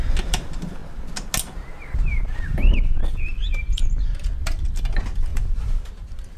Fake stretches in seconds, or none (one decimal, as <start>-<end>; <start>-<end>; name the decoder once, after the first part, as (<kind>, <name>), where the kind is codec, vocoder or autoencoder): 5.3-5.9 (vocoder, BigVGAN v2)